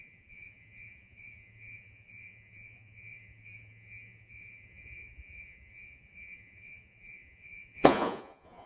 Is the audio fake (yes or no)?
yes